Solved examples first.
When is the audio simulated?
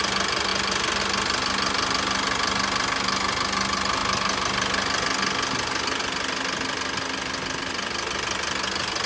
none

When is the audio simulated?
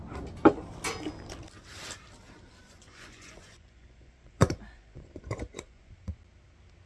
2.6-5.9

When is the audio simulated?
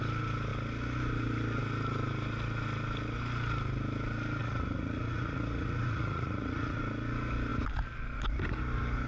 4.4-6.8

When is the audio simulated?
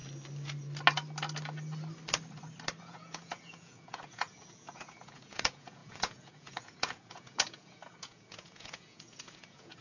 2.8-9.8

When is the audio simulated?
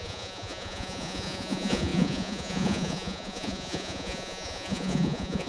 0.0-5.5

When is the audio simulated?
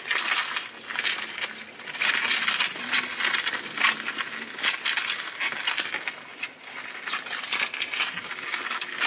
none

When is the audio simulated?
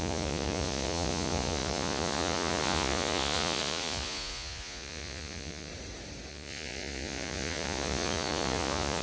0.0-5.7; 6.3-9.0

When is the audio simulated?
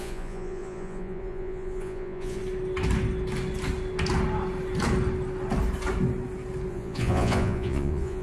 0.0-2.4; 6.7-8.2